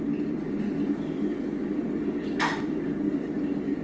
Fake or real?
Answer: real